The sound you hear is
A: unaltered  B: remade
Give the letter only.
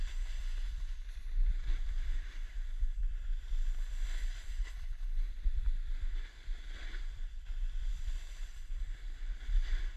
B